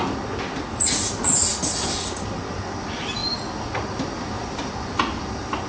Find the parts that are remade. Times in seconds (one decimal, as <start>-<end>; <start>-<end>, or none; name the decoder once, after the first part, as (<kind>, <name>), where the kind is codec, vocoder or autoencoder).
none